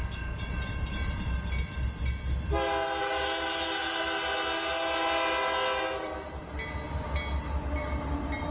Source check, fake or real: real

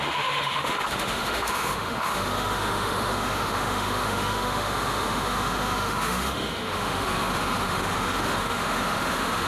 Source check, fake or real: fake